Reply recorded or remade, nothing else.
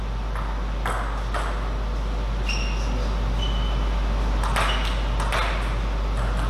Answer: recorded